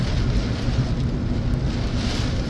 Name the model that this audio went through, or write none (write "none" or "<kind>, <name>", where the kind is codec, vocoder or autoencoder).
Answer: none